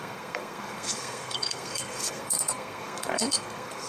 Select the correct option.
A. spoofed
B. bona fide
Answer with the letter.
A